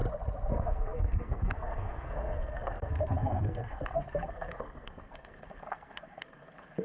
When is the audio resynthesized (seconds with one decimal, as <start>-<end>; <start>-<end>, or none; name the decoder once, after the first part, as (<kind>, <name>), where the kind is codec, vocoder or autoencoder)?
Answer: 0.5-6.8 (codec, SNAC)